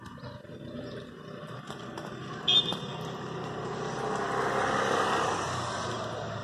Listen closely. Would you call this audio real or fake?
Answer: real